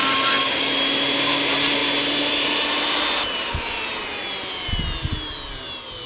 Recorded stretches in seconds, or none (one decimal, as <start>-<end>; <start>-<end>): 0.7-6.1